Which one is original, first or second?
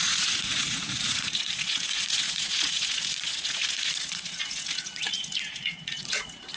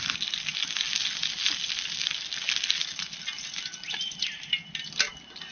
second